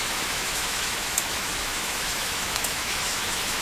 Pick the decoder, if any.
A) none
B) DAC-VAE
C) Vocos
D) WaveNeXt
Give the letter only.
B